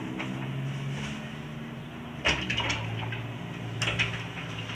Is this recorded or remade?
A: recorded